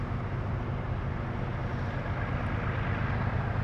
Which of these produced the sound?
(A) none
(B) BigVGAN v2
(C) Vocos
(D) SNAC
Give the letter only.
A